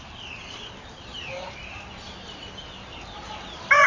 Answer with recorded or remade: recorded